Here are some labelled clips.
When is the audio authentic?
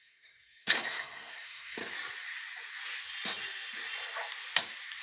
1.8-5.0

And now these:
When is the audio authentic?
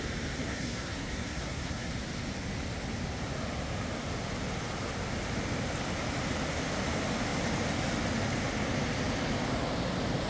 0.0-0.4; 1.9-10.3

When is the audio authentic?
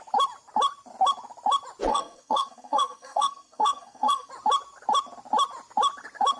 0.0-1.9; 4.3-6.4